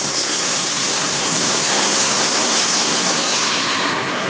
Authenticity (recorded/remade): remade